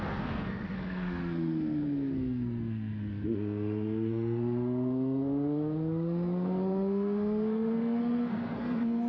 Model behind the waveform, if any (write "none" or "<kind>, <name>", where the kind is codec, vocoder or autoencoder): codec, SNAC